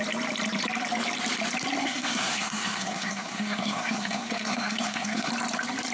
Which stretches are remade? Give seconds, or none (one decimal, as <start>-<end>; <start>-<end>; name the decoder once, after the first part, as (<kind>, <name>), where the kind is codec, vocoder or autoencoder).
1.8-5.3 (codec, SNAC)